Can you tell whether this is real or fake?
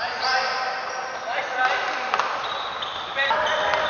real